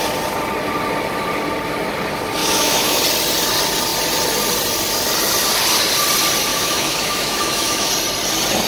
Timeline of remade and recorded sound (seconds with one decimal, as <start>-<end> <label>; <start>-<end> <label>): 0.0-2.4 recorded; 2.4-3.0 remade; 3.0-6.5 recorded; 6.5-7.9 remade; 7.9-8.7 recorded